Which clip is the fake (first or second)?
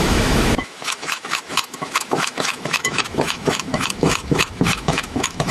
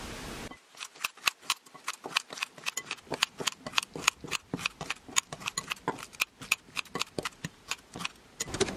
first